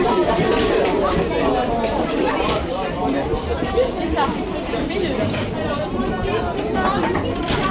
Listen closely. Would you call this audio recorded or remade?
remade